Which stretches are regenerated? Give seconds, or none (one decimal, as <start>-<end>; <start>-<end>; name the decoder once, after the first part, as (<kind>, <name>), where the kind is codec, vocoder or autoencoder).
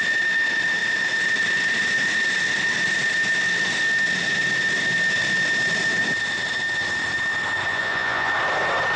7.7-8.3 (vocoder, Vocos)